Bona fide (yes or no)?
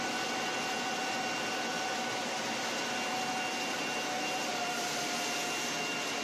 yes